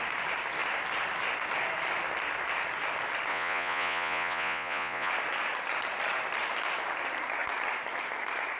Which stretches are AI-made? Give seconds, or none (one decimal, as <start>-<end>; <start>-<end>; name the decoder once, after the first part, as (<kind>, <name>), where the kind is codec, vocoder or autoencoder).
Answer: 3.3-5.1 (vocoder, Vocos)